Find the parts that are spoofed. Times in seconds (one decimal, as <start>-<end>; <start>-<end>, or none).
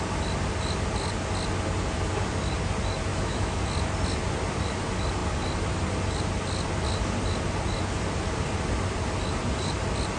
3.1-3.6